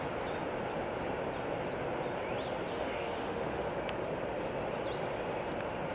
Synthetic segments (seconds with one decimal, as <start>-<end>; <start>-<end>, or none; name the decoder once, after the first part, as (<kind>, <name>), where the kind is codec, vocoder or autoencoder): 2.7-3.7 (autoencoder, DAC-VAE)